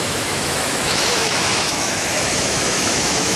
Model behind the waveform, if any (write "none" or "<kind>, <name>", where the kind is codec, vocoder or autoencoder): autoencoder, DAC-VAE